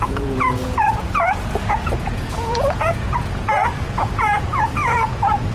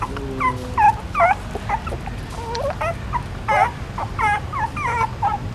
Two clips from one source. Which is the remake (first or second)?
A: first